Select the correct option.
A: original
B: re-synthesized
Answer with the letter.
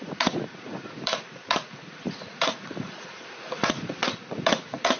B